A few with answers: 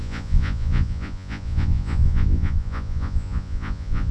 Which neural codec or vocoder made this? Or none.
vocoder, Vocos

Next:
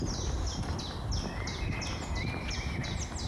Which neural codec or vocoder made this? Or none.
none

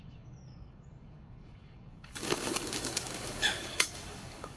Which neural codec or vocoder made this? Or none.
codec, DAC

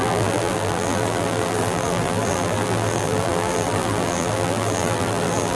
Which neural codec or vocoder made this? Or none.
vocoder, BigVGAN v2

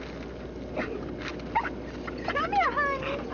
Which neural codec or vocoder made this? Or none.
none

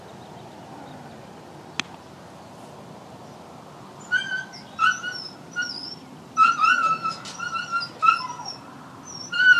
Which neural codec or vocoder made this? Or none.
none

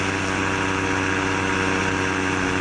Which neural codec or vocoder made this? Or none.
none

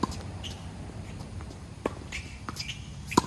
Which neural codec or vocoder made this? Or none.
none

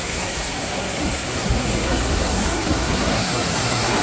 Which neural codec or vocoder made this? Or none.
codec, SNAC